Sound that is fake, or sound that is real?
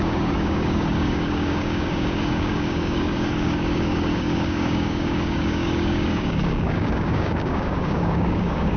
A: fake